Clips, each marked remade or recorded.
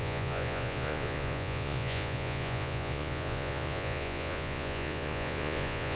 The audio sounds remade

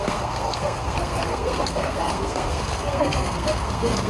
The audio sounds remade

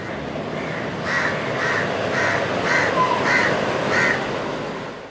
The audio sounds recorded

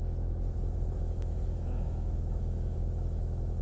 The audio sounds remade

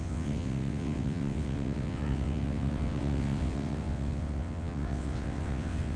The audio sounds remade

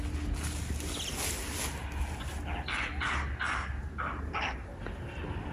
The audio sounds recorded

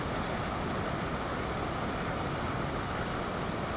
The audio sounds recorded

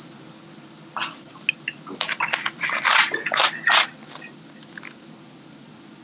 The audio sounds recorded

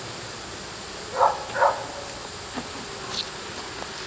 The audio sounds recorded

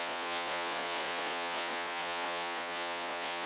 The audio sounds remade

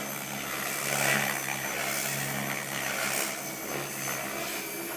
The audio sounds recorded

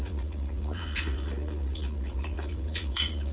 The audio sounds remade